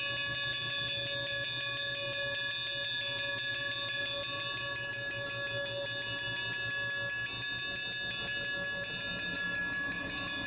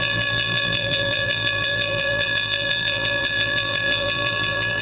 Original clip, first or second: first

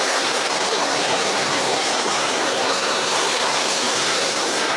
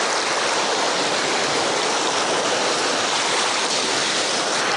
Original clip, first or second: second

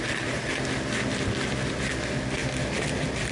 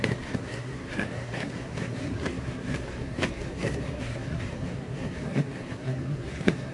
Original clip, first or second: first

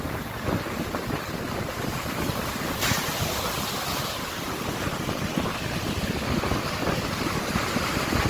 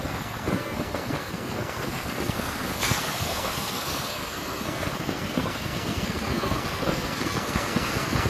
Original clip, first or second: first